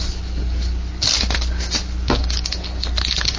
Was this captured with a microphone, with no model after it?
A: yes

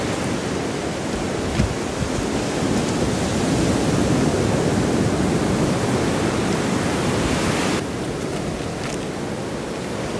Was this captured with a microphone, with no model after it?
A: yes